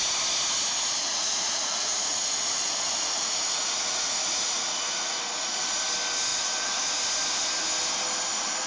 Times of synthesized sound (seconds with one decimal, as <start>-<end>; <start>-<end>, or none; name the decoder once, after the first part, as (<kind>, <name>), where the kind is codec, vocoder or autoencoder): 1.1-5.8 (vocoder, Vocos); 6.3-7.0